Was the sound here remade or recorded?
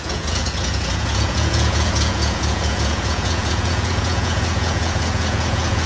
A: remade